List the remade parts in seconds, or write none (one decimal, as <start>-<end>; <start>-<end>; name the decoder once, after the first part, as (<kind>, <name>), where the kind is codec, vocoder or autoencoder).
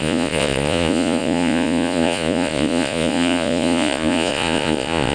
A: 0.0-5.1 (vocoder, Vocos)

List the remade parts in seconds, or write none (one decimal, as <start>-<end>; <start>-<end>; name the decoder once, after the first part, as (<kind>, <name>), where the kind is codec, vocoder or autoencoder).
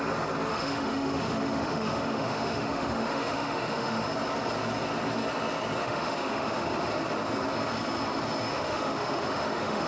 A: 0.5-4.0 (autoencoder, DAC-VAE); 5.8-6.9; 8.5-9.9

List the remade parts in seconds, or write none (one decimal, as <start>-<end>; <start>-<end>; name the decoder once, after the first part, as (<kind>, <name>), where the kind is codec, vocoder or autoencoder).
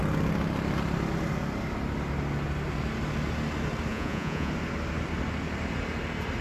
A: 3.9-4.5 (vocoder, Vocos)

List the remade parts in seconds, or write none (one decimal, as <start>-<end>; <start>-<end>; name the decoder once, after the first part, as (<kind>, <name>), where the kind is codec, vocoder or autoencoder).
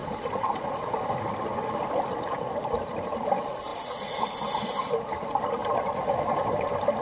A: 5.6-7.0 (vocoder, BigVGAN v2)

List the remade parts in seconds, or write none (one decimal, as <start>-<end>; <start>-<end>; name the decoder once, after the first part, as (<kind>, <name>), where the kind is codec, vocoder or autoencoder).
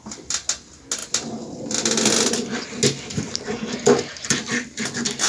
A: none